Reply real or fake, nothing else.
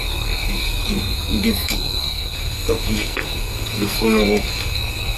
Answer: fake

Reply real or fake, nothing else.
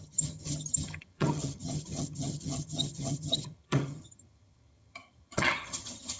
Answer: fake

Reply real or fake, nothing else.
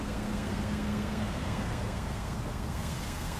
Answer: fake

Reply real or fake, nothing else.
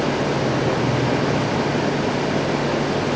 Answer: real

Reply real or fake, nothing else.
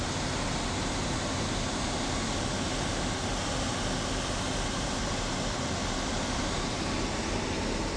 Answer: real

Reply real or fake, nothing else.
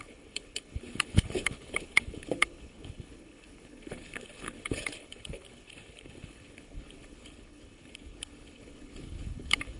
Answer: fake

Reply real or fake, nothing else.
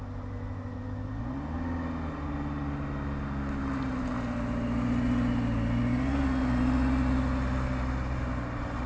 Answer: real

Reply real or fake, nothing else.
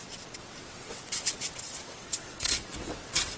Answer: fake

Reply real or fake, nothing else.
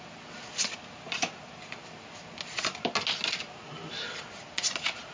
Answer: real